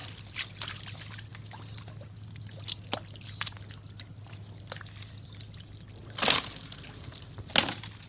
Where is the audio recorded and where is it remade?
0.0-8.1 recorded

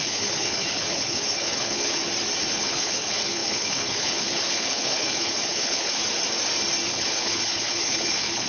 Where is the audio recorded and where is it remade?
0.0-2.0 remade; 2.0-2.5 recorded; 2.5-6.0 remade; 6.0-6.9 recorded; 6.9-8.5 remade

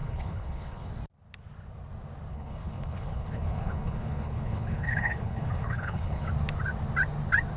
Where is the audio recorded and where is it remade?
0.0-0.9 remade; 0.9-2.3 recorded; 2.3-6.3 remade; 6.3-7.6 recorded

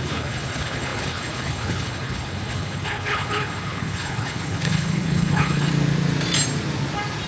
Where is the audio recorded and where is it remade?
0.0-5.7 remade; 5.7-7.3 recorded

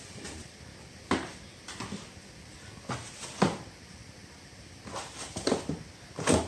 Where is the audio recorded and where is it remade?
0.0-6.5 recorded

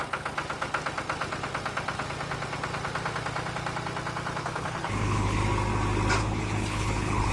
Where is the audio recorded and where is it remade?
0.0-4.4 recorded; 4.4-5.4 remade; 5.4-6.2 recorded; 6.2-7.3 remade

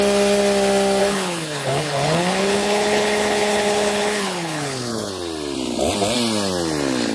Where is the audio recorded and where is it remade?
0.0-1.0 recorded; 1.0-5.1 remade; 5.1-7.1 recorded